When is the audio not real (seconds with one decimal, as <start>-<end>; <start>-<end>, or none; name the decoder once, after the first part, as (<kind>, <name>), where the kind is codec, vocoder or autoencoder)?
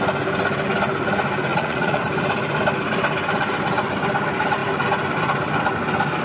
1.5-2.0 (vocoder, Vocos)